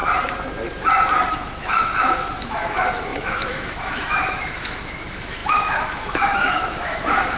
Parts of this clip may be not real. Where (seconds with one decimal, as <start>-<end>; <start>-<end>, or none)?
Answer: 1.3-7.4